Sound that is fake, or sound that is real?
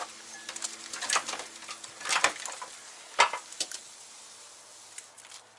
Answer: real